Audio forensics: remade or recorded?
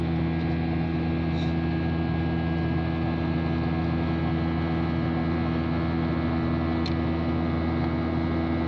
recorded